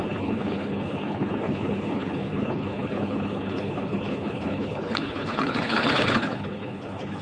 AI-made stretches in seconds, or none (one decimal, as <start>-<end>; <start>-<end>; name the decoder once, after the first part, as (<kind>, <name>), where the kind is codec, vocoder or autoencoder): 0.0-7.2 (codec, HILCodec)